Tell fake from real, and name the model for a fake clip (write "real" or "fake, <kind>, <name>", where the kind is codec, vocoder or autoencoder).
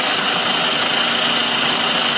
real